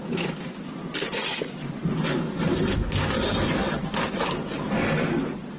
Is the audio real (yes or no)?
yes